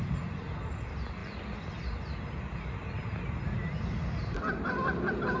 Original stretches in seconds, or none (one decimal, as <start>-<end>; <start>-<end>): 0.0-5.4